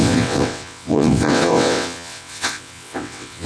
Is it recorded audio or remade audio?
remade